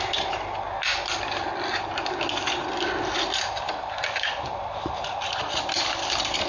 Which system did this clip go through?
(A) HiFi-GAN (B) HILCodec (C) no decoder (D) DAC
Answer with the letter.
C